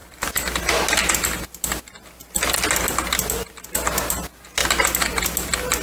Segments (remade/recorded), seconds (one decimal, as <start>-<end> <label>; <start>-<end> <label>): 0.0-5.8 recorded